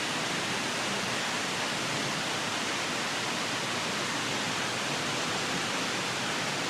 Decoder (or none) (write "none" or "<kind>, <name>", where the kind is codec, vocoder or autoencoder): none